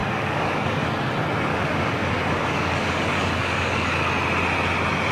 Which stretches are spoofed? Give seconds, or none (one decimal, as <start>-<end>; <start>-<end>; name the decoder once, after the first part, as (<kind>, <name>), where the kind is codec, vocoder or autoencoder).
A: 0.0-0.9 (codec, DAC); 1.5-4.1